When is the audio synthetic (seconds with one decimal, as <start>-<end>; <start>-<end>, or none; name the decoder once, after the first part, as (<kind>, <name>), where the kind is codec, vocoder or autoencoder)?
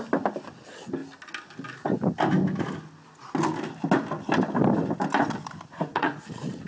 5.9-6.7 (vocoder, Vocos)